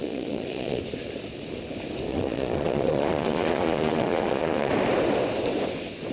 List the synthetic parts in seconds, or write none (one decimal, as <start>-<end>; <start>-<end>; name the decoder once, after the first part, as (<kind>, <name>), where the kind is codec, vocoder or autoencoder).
0.0-0.8 (vocoder, Vocos); 2.1-4.7